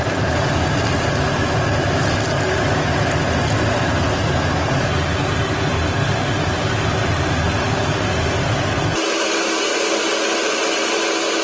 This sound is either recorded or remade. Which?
recorded